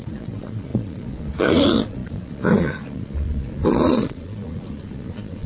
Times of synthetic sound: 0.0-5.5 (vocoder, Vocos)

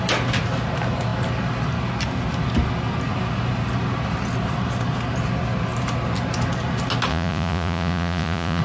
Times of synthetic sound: 7.1-8.6 (vocoder, Vocos)